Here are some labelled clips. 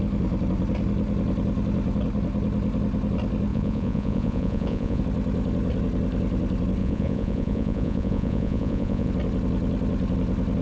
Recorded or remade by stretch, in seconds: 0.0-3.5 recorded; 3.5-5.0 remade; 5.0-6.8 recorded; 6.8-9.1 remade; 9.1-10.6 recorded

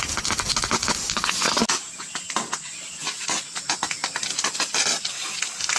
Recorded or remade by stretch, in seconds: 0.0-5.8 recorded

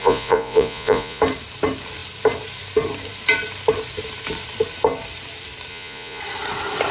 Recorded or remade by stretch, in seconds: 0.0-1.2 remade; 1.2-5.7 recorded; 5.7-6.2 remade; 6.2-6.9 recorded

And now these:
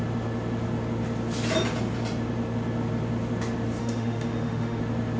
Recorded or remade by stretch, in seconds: 0.0-3.8 recorded; 3.8-4.8 remade; 4.8-5.2 recorded

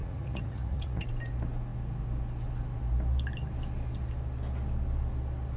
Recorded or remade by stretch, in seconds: 0.0-1.1 remade; 1.1-5.6 recorded

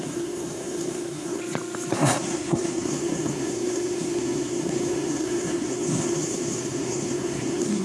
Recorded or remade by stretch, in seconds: 0.0-1.4 remade; 1.4-1.9 recorded; 1.9-7.8 remade

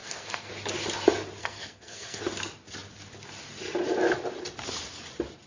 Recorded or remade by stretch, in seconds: 0.0-0.5 remade; 0.5-1.4 recorded; 1.4-2.2 remade; 2.2-5.5 recorded

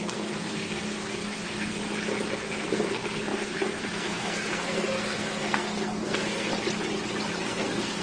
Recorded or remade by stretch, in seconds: 0.0-1.8 remade; 1.8-2.3 recorded; 2.3-6.5 remade; 6.5-7.4 recorded; 7.4-8.0 remade